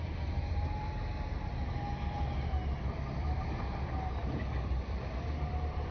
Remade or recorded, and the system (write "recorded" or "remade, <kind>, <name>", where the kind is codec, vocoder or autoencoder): remade, vocoder, BigVGAN v2